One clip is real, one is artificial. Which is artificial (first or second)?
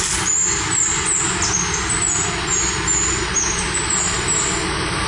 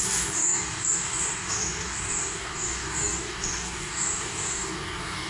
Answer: second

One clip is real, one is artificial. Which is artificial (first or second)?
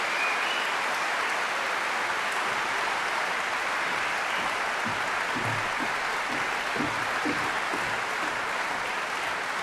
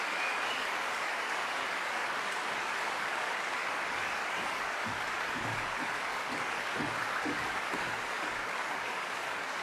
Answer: second